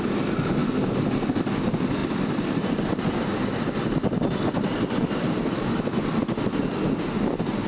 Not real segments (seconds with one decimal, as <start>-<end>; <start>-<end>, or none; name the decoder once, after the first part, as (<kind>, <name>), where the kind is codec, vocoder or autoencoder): 2.0-6.6 (vocoder, BigVGAN v2)